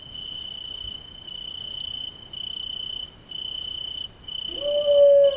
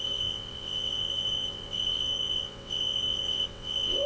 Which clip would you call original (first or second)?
first